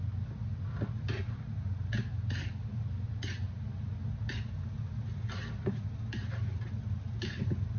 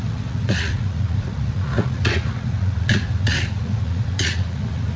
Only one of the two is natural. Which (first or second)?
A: first